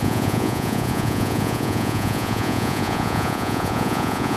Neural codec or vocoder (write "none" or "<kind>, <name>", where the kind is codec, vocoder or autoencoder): vocoder, Vocos